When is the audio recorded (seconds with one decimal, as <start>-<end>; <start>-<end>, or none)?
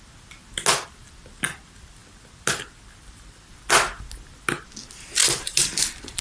0.0-5.2